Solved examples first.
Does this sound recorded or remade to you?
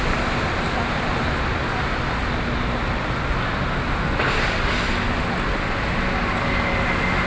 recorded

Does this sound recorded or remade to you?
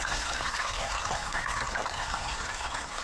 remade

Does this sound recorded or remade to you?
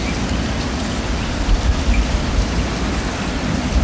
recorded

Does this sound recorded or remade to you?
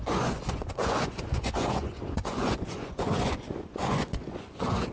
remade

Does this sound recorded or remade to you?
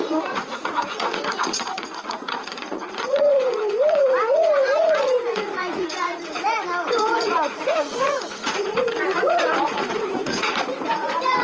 remade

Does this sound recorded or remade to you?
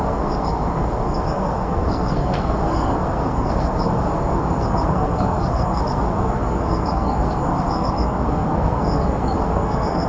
remade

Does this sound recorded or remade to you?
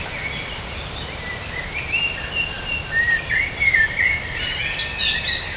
recorded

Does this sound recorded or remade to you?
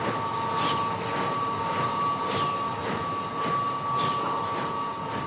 recorded